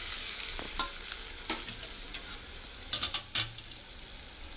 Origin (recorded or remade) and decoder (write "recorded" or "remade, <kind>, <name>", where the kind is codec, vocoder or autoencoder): recorded